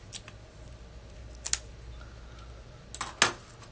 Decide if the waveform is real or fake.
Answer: real